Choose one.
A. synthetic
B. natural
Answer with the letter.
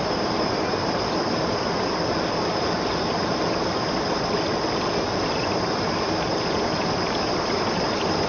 B